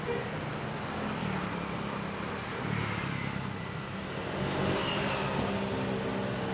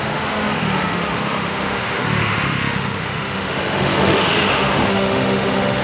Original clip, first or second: first